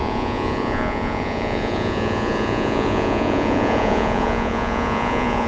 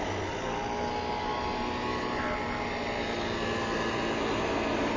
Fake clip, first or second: first